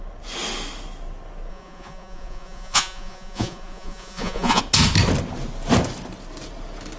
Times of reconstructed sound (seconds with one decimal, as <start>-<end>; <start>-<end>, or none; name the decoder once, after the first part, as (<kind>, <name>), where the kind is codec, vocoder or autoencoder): 1.5-4.6 (vocoder, Vocos)

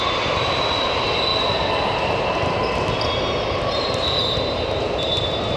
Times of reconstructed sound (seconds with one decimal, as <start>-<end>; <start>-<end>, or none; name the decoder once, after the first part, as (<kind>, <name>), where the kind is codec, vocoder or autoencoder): none

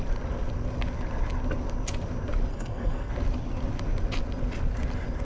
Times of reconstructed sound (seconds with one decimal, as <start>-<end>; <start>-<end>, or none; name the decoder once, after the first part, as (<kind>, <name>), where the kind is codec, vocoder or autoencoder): 2.5-3.1 (codec, SNAC)

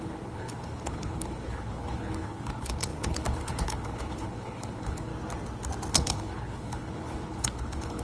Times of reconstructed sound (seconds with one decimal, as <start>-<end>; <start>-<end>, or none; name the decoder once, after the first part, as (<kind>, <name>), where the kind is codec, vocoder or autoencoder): 0.0-5.1 (codec, HILCodec); 5.9-8.0